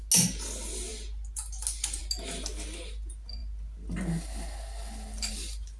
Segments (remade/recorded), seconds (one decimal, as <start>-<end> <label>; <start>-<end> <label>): 0.0-5.8 recorded